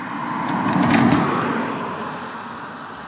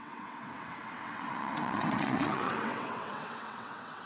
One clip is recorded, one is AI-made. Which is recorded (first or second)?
first